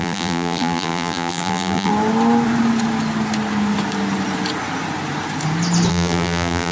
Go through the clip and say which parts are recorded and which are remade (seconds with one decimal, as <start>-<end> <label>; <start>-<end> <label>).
0.0-1.9 remade; 1.9-5.9 recorded; 5.9-6.7 remade